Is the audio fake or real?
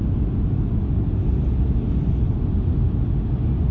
real